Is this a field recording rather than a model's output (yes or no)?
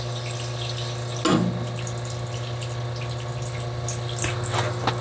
yes